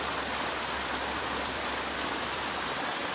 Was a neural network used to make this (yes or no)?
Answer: yes